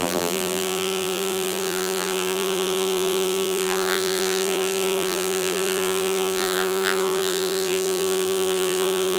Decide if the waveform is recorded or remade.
remade